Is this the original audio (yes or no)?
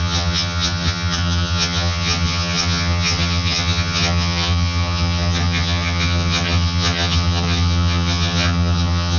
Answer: no